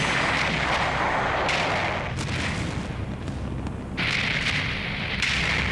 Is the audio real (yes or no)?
yes